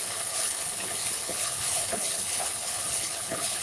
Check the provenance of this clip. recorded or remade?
remade